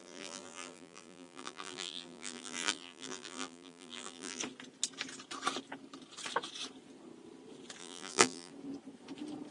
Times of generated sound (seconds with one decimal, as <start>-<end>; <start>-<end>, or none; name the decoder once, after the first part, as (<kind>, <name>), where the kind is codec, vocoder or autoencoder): 0.0-4.4 (vocoder, BigVGAN v2); 7.8-8.5